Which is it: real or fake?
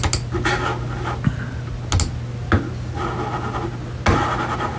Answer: real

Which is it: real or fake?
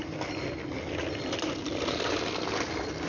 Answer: real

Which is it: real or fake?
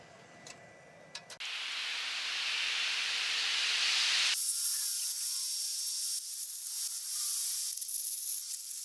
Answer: real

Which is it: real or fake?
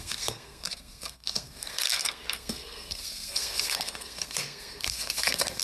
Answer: fake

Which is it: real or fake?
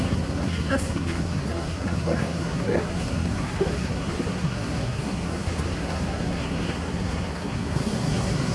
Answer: fake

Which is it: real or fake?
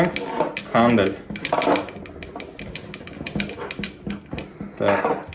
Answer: real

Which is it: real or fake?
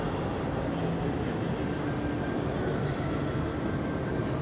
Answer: real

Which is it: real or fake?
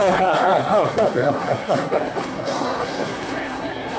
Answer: fake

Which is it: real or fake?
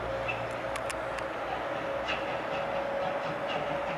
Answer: real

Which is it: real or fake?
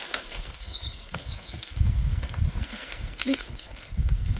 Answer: fake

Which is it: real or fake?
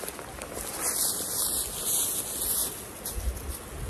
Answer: real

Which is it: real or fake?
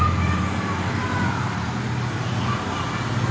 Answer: real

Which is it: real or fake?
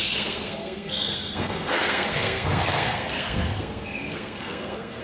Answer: fake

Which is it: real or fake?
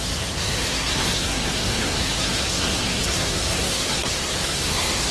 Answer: fake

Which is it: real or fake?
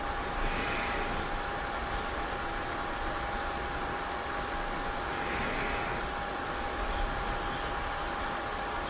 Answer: real